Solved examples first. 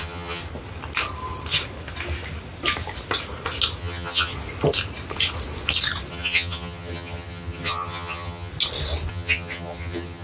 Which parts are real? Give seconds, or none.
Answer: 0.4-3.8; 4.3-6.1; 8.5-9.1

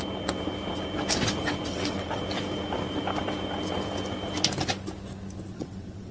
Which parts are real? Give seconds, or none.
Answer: 0.0-1.7; 2.2-5.5

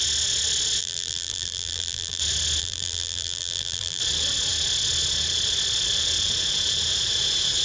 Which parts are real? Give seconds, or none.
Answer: 0.0-0.8; 2.2-2.6; 4.0-7.6

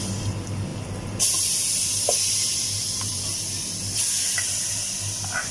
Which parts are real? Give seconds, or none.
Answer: 0.0-5.5

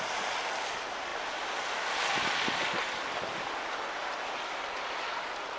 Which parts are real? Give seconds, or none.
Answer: 0.0-5.6